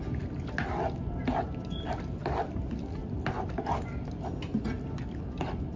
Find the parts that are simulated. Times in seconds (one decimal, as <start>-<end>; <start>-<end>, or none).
none